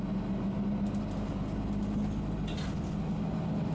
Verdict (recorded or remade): recorded